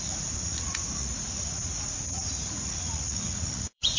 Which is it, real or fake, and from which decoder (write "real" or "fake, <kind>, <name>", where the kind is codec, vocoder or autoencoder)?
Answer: fake, vocoder, Vocos